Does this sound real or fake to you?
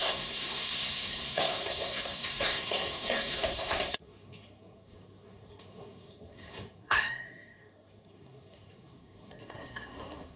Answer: fake